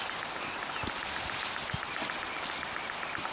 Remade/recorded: recorded